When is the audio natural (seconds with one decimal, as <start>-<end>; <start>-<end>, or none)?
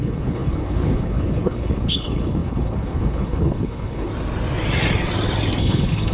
4.1-5.6